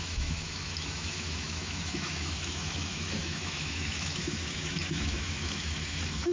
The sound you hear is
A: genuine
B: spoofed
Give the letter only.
B